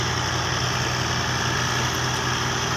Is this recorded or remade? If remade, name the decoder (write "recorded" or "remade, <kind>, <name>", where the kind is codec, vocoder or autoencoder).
recorded